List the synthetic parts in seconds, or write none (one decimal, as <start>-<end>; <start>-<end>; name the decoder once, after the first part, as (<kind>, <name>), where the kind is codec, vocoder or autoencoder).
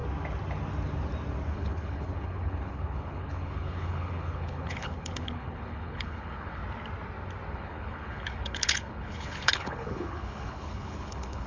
1.5-6.6 (codec, HILCodec); 7.5-11.5